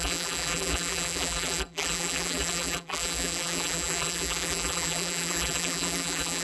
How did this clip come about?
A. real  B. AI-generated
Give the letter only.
B